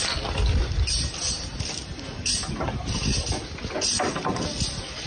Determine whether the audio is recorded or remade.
recorded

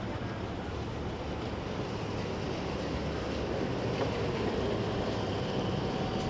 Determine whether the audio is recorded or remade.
recorded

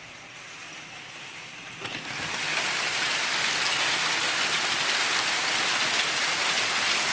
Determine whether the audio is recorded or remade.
recorded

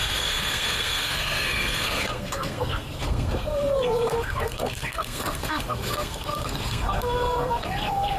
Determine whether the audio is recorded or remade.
remade